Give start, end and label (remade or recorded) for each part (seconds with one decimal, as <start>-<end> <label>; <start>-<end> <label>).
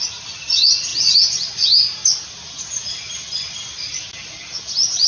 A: 0.0-5.1 recorded